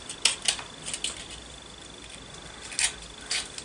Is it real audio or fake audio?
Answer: real